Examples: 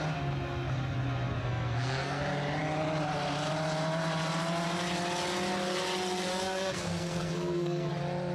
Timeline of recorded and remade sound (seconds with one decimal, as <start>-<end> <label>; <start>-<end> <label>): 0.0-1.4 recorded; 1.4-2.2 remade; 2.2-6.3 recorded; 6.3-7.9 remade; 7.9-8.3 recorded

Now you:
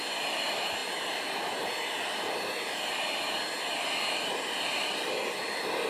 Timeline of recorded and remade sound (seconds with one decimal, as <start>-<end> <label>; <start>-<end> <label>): 0.0-5.9 recorded

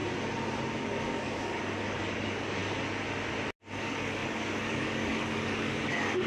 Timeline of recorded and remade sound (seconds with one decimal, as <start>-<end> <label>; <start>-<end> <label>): 0.0-0.8 recorded; 0.8-2.6 remade; 2.6-3.8 recorded; 3.8-6.3 remade